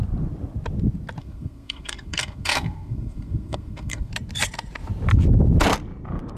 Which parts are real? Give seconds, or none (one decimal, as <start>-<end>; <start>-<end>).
0.0-1.2; 4.1-6.4